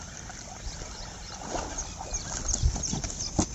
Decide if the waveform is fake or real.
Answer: real